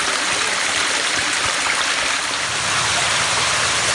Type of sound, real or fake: real